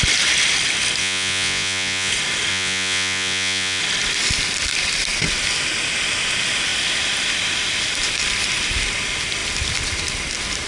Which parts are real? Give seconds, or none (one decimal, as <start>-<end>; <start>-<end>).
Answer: 0.0-1.0; 2.1-2.5; 3.8-10.7